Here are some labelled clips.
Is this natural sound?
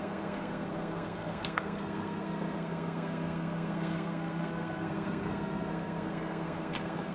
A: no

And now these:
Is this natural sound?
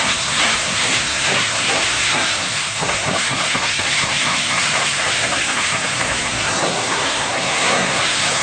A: no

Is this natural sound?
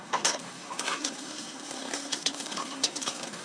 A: no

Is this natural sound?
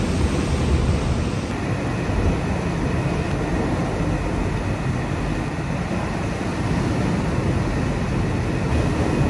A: yes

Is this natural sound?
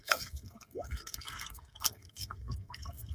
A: no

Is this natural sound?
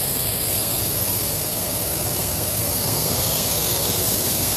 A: no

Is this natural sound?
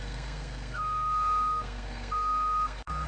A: no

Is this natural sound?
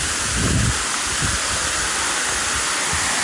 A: yes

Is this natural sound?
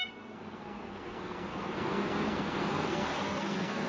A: no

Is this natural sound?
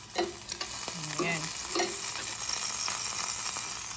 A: yes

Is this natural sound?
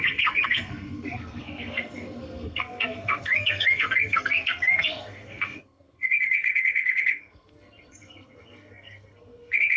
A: no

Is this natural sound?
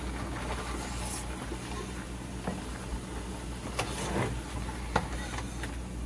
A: yes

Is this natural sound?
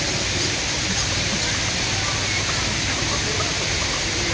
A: yes